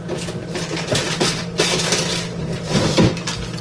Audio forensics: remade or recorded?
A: recorded